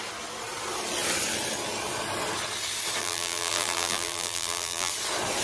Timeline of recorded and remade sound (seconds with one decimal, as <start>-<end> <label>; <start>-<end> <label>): 0.0-3.0 recorded; 3.0-4.9 remade; 4.9-5.4 recorded